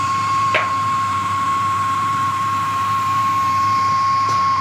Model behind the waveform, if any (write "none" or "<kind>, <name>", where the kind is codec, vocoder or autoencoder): vocoder, BigVGAN v2